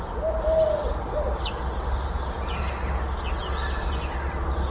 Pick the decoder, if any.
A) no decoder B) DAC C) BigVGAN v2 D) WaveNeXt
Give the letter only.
A